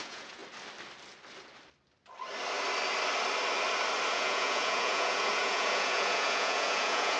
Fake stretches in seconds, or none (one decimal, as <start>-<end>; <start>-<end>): 0.0-0.4; 4.1-7.2

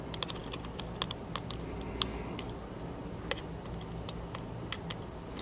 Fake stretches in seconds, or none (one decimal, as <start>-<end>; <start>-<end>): none

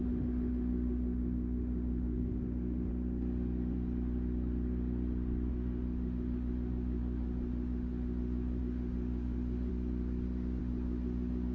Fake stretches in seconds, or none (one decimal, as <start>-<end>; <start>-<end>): 0.0-2.9; 5.5-9.7; 10.6-11.5

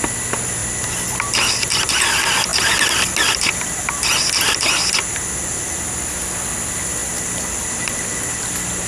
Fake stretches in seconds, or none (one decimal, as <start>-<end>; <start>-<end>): none

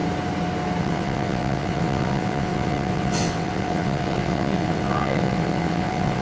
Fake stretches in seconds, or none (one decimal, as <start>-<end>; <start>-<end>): 0.8-6.2